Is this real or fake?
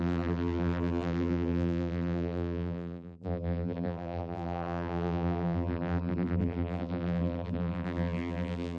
fake